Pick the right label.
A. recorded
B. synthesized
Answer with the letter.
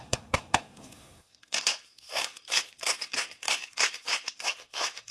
B